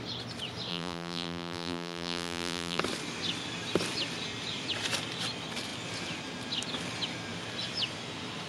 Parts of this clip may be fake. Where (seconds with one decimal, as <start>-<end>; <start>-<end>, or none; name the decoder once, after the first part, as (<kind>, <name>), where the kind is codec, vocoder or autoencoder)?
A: 0.7-2.8 (vocoder, BigVGAN v2)